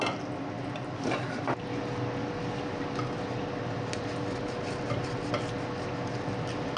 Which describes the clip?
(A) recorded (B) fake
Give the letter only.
A